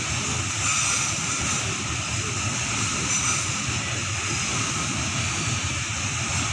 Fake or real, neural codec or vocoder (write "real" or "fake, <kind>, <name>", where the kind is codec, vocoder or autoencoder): real